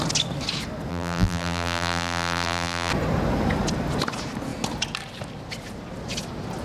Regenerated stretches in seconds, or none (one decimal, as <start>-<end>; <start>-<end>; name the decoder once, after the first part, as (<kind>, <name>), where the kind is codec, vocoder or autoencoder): 0.9-2.9 (vocoder, BigVGAN v2)